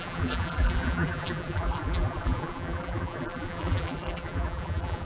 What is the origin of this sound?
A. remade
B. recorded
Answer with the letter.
A